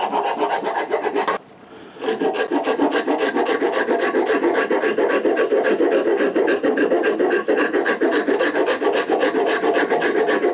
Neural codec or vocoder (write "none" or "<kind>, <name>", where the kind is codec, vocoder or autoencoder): none